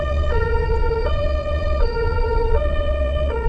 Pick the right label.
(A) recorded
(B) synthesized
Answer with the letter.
B